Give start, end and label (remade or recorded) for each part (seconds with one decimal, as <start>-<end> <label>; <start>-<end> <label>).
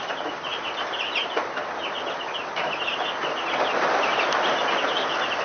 0.0-5.4 recorded